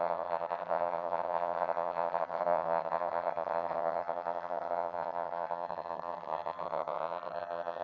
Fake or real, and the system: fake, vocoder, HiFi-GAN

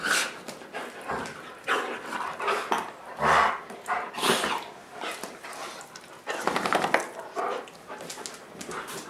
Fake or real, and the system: real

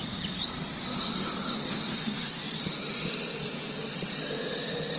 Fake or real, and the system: real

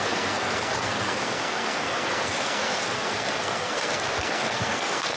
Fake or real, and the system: fake, codec, SNAC